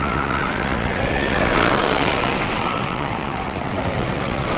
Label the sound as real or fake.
fake